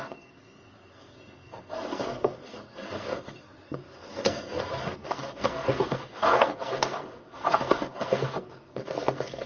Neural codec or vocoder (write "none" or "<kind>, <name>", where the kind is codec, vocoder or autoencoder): codec, SNAC